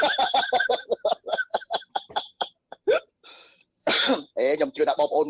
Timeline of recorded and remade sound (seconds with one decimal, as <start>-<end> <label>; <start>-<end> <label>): 0.0-4.0 remade; 4.0-4.6 recorded; 4.6-5.3 remade